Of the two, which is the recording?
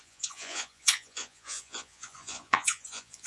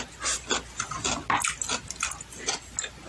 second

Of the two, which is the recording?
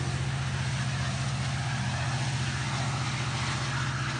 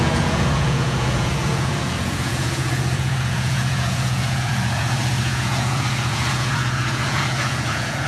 first